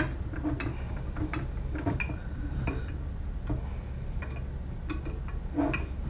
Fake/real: real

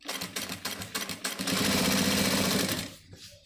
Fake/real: fake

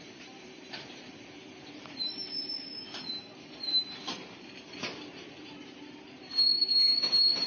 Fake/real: fake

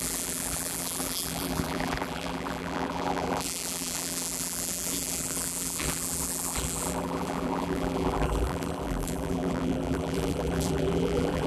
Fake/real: fake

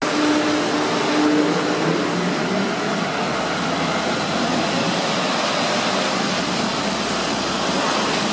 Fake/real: real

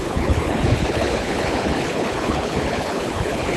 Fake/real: fake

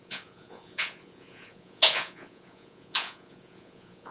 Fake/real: fake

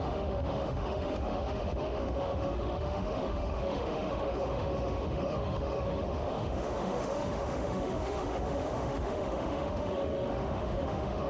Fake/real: fake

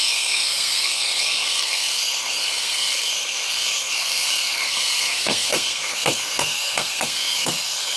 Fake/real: fake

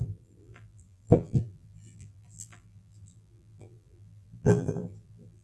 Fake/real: fake